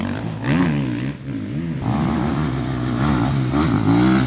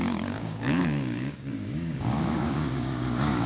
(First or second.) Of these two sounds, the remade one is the second